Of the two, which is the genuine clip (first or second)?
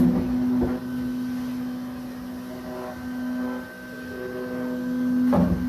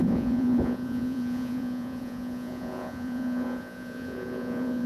first